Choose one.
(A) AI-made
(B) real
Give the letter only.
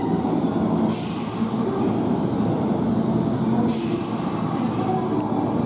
B